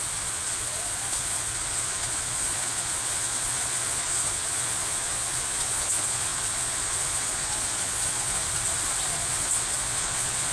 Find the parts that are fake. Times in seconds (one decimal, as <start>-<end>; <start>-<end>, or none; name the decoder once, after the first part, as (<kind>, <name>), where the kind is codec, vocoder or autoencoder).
0.0-8.4 (vocoder, Vocos); 9.1-10.5